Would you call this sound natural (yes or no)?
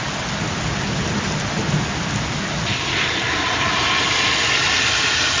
yes